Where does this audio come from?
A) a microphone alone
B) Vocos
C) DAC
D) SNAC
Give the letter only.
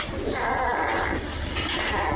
A